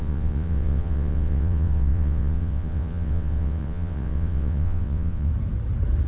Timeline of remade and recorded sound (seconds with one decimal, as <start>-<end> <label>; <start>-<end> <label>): 0.0-5.3 remade; 5.3-6.1 recorded